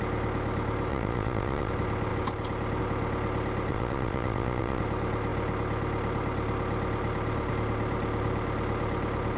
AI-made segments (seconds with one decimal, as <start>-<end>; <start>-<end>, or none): 0.9-1.7; 3.7-4.8